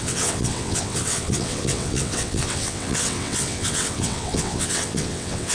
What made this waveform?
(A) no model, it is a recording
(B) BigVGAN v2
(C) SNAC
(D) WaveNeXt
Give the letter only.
D